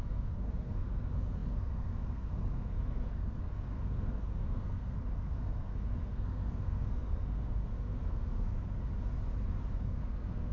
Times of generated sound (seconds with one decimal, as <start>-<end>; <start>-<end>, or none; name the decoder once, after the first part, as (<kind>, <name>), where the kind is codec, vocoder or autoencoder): 0.0-8.8 (codec, SNAC); 9.8-10.5